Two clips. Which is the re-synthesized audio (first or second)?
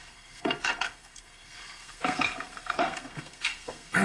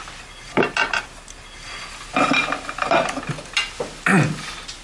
first